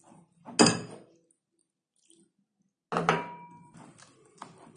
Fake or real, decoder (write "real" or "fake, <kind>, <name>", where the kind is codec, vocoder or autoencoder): real